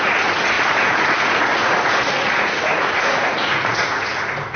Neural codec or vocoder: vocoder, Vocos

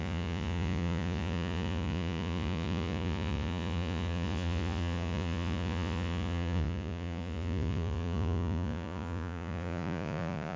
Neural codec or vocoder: vocoder, Vocos